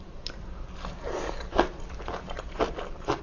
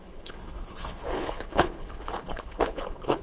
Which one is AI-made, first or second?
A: second